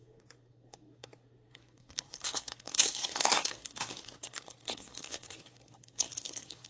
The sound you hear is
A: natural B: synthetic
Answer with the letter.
B